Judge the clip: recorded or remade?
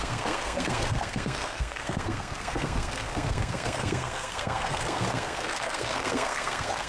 remade